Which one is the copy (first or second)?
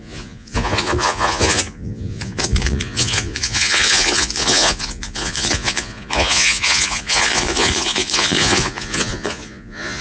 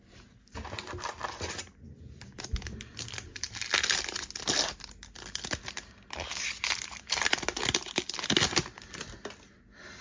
first